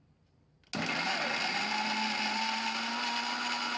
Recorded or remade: recorded